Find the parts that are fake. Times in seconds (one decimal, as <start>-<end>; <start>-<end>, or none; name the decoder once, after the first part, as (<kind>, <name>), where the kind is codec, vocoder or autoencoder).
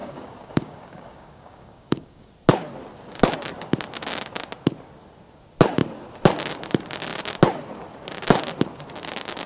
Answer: 0.0-2.3 (codec, DAC)